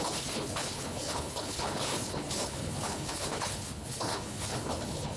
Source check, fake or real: fake